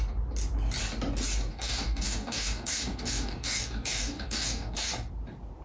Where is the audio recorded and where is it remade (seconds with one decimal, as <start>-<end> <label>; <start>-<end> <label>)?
0.0-1.5 recorded; 1.5-4.9 remade; 4.9-5.6 recorded